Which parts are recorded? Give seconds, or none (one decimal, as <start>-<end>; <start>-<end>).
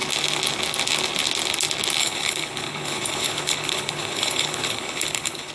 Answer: 0.0-2.0